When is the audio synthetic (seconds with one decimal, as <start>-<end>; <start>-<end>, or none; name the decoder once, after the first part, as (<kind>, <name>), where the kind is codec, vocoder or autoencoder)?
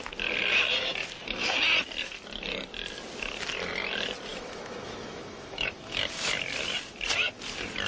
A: 4.3-6.3 (autoencoder, DAC-VAE)